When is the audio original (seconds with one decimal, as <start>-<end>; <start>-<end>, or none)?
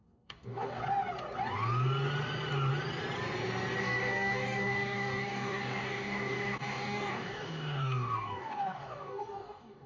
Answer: 0.8-3.8